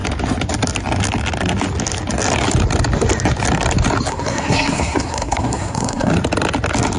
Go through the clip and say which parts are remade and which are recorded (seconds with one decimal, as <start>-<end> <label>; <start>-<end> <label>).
0.0-4.1 recorded; 4.1-6.1 remade; 6.1-7.0 recorded